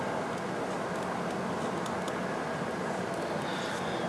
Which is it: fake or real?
real